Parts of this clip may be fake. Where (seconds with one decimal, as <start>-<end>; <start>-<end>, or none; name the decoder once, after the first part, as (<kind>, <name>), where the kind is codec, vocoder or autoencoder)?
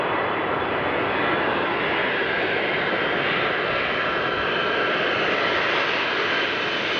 2.0-2.9 (vocoder, BigVGAN v2)